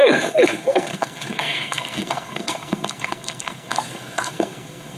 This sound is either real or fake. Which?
fake